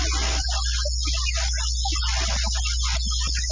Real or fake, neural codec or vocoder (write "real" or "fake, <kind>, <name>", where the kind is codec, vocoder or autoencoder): real